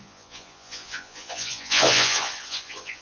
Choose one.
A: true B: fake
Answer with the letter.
B